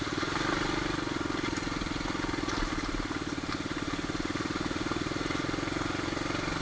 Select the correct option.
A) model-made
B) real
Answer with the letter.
B